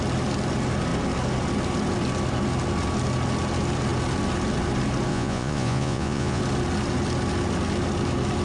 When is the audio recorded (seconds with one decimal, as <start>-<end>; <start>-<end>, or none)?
0.0-5.1; 6.4-8.4